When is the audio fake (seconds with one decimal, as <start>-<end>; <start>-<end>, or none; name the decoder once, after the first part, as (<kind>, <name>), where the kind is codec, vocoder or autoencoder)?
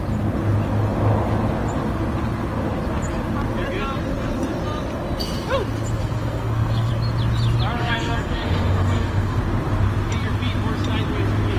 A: 6.0-6.9 (codec, SNAC); 7.8-9.4